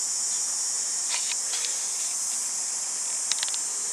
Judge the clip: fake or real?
real